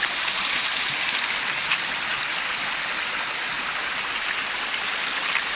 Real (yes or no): yes